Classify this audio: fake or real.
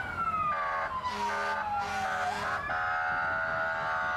real